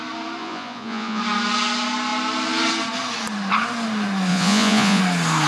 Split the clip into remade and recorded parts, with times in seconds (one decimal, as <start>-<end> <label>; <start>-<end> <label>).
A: 0.0-0.4 recorded; 0.4-1.2 remade; 1.2-4.3 recorded; 4.3-5.0 remade; 5.0-5.5 recorded